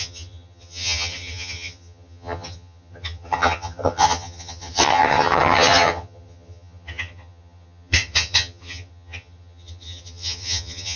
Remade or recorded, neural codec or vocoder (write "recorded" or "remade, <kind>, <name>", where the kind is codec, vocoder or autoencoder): remade, vocoder, HiFi-GAN